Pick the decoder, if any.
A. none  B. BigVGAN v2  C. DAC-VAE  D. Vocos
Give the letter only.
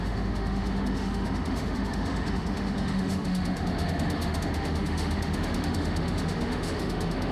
C